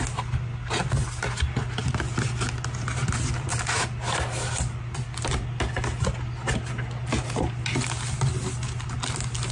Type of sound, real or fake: real